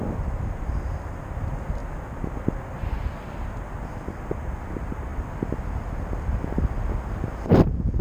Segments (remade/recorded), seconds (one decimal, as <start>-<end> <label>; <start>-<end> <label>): 0.0-8.0 recorded